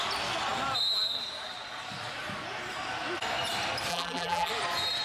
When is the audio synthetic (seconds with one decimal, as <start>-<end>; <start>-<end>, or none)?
3.9-4.5